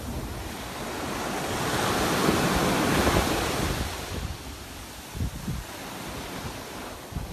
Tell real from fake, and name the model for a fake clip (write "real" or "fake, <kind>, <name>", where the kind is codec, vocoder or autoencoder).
real